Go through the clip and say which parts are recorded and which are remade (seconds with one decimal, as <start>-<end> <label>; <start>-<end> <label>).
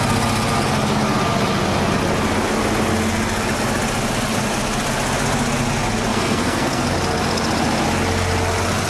0.0-6.1 recorded; 6.1-6.9 remade; 6.9-8.9 recorded